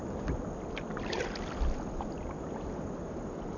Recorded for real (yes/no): yes